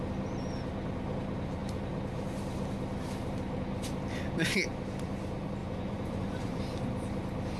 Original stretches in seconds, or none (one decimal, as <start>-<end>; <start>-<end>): 0.0-5.6; 6.6-7.6